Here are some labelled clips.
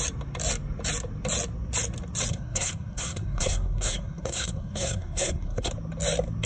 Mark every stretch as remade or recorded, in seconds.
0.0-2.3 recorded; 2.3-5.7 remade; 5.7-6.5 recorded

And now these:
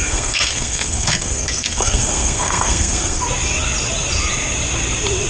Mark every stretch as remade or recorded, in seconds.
0.0-3.2 remade; 3.2-5.3 recorded